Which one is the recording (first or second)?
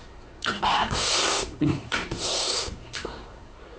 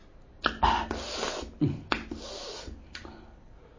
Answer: second